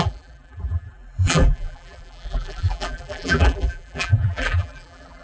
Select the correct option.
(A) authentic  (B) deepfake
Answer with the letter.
B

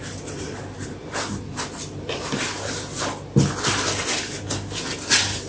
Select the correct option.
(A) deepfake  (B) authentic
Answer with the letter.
B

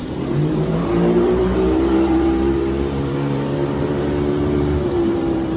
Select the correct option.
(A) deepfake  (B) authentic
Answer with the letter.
A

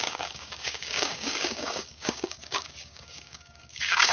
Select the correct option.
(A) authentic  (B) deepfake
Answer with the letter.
B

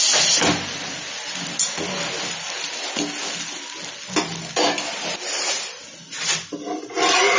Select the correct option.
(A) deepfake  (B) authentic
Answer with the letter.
B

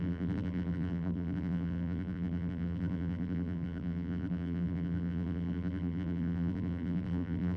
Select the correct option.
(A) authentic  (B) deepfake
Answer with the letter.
B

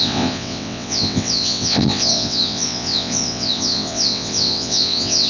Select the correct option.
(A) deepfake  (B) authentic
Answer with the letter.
A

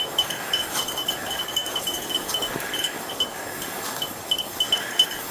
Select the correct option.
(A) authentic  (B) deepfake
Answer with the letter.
B